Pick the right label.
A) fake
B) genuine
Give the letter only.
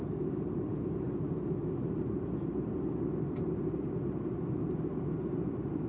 B